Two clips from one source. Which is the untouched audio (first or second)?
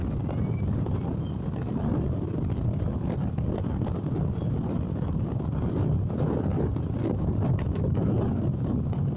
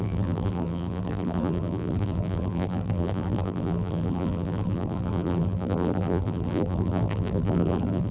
first